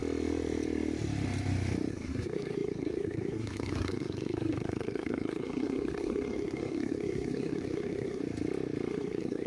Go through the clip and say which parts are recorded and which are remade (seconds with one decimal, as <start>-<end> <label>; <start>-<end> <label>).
0.0-1.9 recorded; 1.9-8.2 remade; 8.2-8.9 recorded; 8.9-9.5 remade